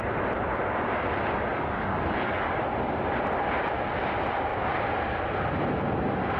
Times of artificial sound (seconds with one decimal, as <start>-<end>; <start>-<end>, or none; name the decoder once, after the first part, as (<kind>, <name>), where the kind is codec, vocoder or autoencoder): 1.5-2.6 (codec, DAC)